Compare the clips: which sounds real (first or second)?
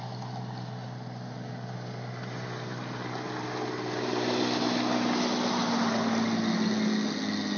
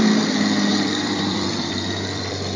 first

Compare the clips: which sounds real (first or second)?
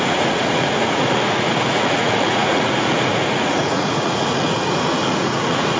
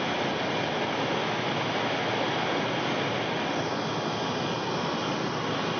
second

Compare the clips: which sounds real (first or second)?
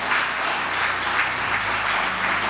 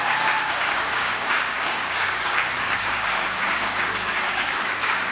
first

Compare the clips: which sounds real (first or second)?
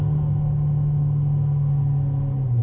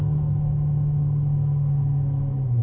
first